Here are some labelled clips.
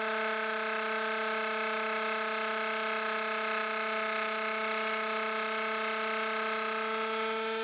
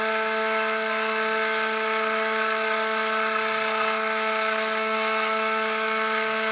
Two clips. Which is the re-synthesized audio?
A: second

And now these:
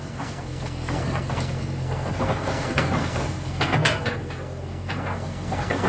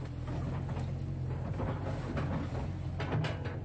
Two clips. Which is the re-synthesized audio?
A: first